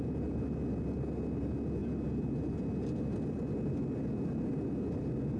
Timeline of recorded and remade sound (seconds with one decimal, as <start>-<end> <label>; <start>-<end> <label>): 0.0-5.4 recorded